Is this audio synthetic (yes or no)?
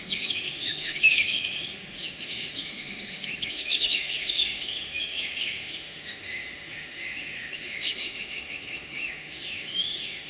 yes